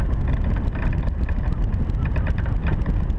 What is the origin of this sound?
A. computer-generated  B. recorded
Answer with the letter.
B